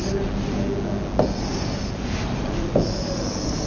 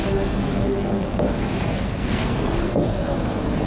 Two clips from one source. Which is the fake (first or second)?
second